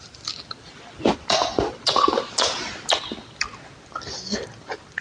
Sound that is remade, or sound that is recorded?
recorded